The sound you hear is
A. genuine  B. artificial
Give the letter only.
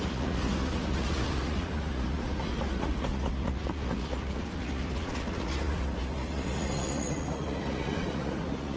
B